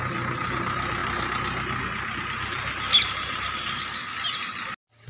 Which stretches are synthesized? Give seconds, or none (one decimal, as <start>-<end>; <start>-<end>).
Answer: none